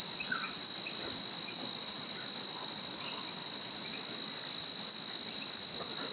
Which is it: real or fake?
real